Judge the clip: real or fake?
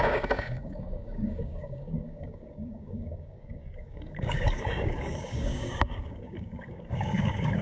fake